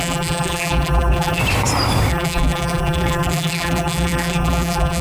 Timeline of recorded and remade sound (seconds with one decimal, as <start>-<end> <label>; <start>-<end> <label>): 0.0-1.4 remade; 1.4-2.1 recorded; 2.1-5.0 remade